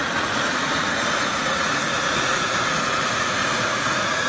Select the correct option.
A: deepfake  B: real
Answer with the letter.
A